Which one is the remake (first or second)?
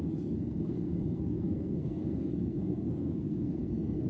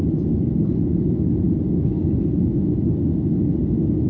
first